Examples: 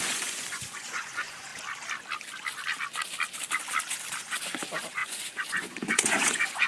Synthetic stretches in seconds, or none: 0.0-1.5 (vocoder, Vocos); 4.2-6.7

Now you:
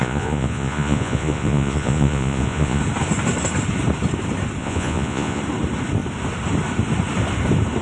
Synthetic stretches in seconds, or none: 0.0-2.8 (vocoder, Vocos); 4.6-5.4

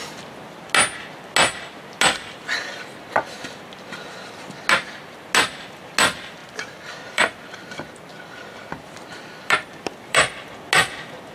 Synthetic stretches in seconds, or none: 6.4-10.3 (vocoder, BigVGAN v2)

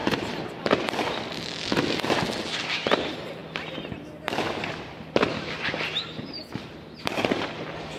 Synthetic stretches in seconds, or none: 0.6-8.0 (vocoder, BigVGAN v2)

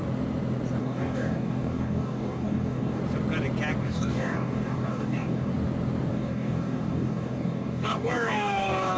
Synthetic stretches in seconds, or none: 0.8-3.0 (codec, DAC); 3.8-5.5; 6.1-9.0

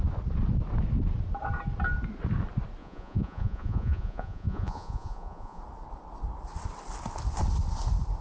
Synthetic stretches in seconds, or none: 2.8-5.6 (vocoder, Vocos)